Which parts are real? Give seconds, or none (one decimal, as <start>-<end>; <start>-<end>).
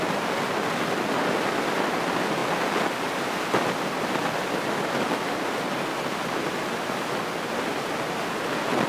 0.0-8.9